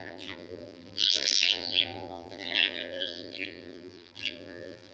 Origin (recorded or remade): remade